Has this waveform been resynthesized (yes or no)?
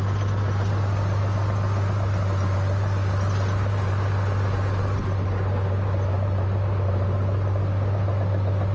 no